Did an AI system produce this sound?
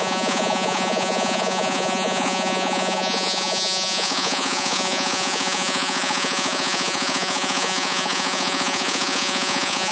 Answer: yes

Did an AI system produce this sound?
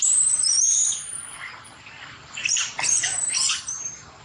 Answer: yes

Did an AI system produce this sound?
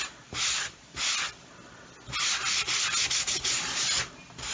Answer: no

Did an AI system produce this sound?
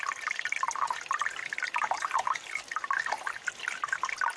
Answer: no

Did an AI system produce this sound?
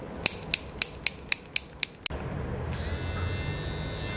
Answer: no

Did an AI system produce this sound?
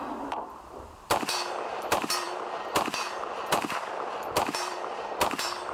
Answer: yes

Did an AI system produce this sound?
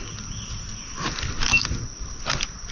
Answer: no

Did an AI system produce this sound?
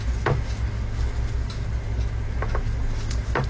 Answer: no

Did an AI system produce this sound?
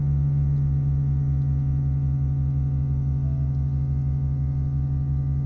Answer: no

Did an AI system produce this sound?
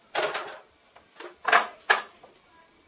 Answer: no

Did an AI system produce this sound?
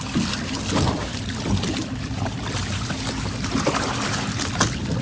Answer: no